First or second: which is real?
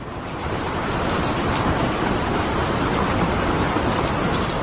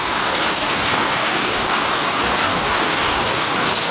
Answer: first